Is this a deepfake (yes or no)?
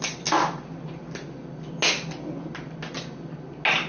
no